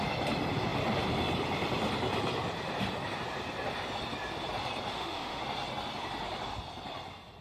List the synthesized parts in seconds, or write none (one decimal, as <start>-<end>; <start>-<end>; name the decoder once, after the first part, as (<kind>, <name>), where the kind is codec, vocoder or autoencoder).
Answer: 4.9-5.4 (autoencoder, DAC-VAE)